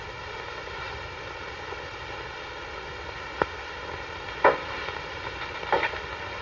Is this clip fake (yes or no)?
no